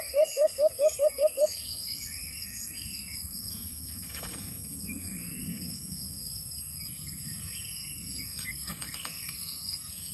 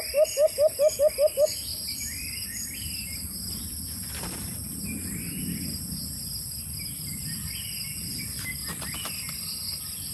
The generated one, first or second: first